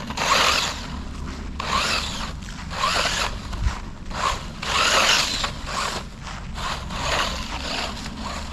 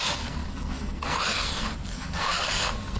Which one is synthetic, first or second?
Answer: second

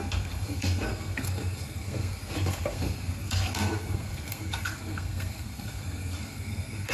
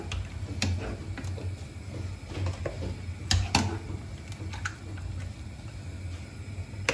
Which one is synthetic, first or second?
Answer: first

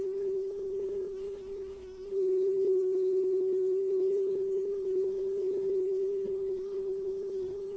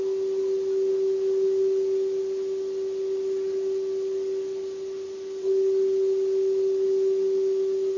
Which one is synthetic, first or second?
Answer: first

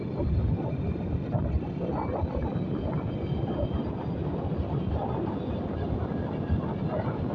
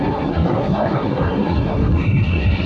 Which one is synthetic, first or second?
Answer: second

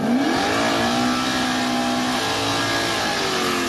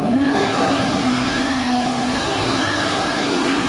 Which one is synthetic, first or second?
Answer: second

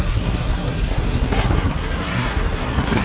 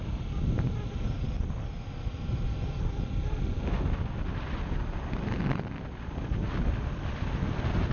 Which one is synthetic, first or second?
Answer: first